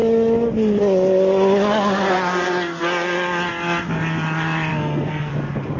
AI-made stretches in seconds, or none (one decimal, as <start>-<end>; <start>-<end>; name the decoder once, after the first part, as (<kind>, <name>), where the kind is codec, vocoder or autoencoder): 4.7-5.3 (codec, SNAC)